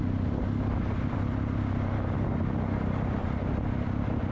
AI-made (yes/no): no